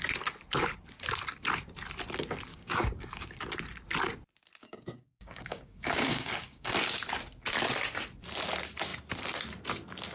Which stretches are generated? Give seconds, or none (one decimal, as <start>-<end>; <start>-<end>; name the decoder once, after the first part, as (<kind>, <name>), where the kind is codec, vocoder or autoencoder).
2.5-3.4 (codec, DAC); 4.6-6.7